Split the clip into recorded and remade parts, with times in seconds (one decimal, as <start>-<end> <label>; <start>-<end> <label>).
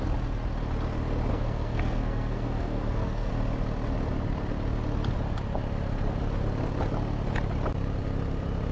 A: 0.0-1.3 recorded; 1.3-3.3 remade; 3.3-8.7 recorded